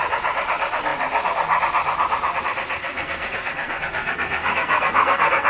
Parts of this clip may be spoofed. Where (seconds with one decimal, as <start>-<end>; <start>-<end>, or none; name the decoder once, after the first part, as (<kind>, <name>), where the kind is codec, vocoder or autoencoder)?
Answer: 2.8-5.5 (codec, SNAC)